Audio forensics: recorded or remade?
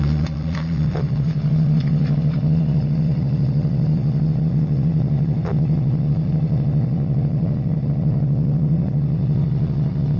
remade